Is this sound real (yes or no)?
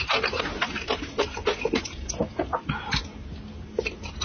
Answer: yes